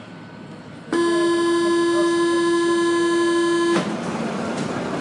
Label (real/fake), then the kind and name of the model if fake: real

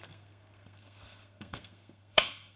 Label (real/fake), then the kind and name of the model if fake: fake, codec, SNAC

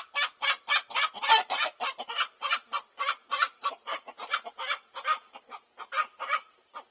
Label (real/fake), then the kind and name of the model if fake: real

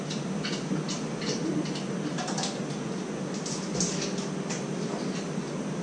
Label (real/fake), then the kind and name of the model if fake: real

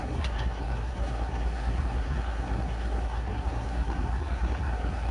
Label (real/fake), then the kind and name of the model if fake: fake, codec, SNAC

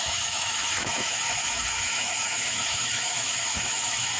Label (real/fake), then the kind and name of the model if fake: fake, autoencoder, DAC-VAE